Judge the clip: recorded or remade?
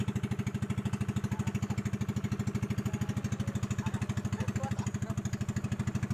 recorded